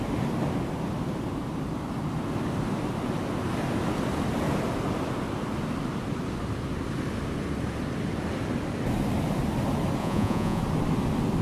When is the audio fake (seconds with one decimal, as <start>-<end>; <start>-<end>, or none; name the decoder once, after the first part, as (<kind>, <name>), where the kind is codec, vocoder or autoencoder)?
10.0-10.6 (vocoder, Vocos)